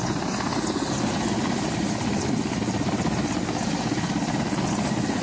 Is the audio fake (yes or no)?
no